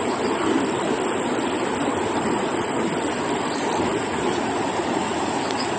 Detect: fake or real real